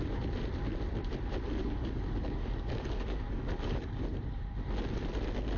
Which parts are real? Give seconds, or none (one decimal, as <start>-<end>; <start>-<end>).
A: 0.0-1.6; 4.0-5.6